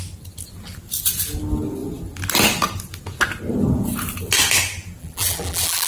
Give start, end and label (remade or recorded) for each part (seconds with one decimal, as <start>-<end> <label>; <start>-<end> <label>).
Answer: 0.0-5.0 recorded; 5.0-5.9 remade